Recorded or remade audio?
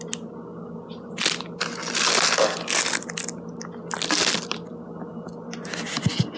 recorded